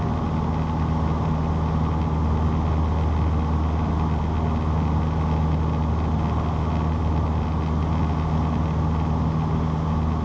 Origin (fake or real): real